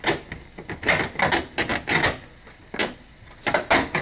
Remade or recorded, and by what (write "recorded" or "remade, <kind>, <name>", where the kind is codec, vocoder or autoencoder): recorded